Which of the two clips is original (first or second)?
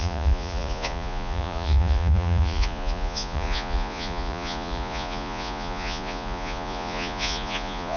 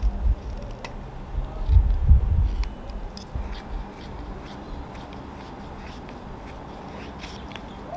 second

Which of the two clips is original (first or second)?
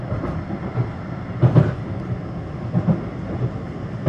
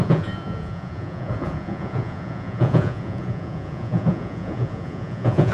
first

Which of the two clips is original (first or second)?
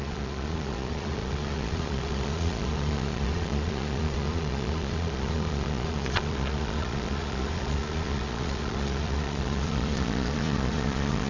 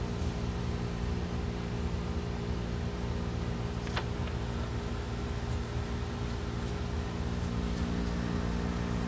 second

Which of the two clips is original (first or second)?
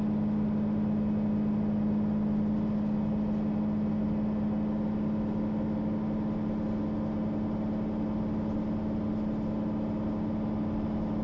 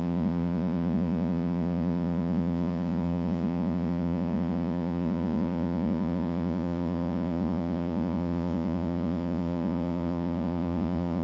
first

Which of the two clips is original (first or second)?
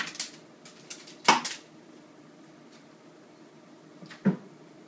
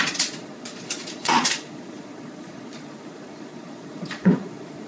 first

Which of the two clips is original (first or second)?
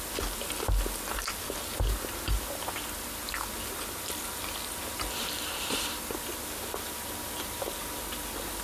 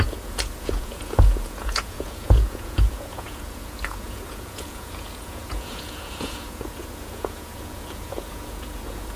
first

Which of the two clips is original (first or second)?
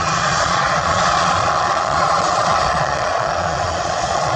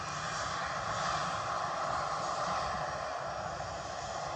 second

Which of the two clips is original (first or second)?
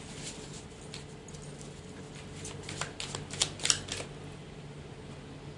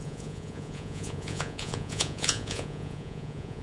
first